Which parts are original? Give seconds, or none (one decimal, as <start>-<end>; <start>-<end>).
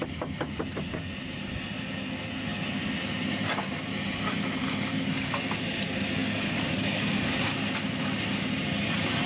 0.0-4.9; 5.8-6.2; 7.4-9.3